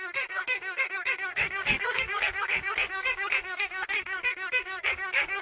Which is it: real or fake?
fake